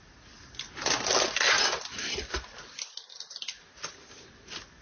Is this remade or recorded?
recorded